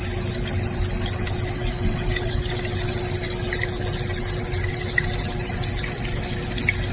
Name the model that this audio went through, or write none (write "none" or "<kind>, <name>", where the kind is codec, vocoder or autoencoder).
none